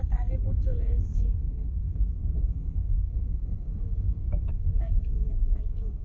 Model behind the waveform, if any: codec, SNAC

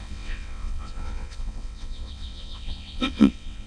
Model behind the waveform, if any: vocoder, WaveNeXt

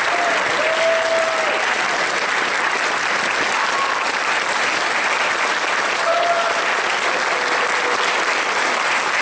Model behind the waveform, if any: none